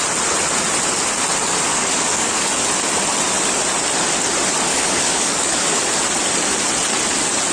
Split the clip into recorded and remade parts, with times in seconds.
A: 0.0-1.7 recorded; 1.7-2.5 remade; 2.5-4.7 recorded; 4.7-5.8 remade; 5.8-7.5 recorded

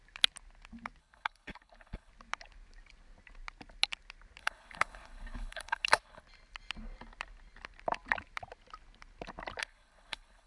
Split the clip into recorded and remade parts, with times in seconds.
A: 0.0-1.0 recorded; 1.0-2.1 remade; 2.1-4.4 recorded; 4.4-6.2 remade; 6.2-9.6 recorded; 9.6-10.5 remade

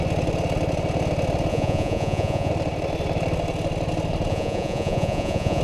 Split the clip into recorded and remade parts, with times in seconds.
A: 0.0-1.5 recorded; 1.5-2.5 remade; 2.5-4.3 recorded; 4.3-5.6 remade

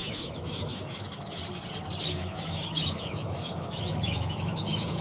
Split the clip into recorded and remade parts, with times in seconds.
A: 0.0-1.4 remade; 1.4-2.0 recorded; 2.0-5.0 remade

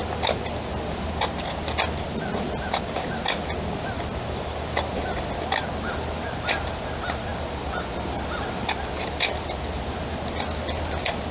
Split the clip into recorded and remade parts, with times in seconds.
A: 0.0-11.3 recorded

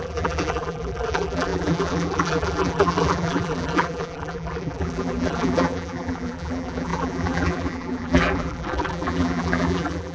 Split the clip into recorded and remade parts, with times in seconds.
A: 0.0-10.1 remade

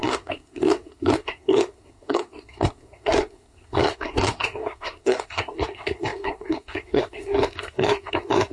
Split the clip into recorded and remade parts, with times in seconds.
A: 0.0-8.5 remade

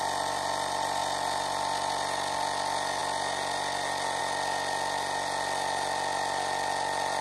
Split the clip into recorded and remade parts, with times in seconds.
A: 0.0-7.2 recorded